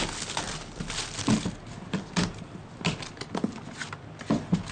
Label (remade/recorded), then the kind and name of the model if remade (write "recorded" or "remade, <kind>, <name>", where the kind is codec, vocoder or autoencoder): recorded